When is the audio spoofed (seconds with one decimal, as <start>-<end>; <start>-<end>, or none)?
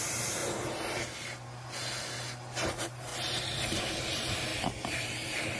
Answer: 0.0-0.4; 2.7-3.1; 3.8-4.5; 5.0-5.6